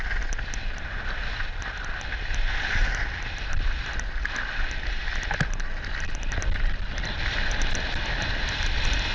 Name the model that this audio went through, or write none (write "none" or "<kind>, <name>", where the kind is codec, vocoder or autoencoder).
none